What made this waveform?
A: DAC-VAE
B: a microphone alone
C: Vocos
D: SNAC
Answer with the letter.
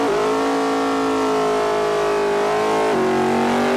B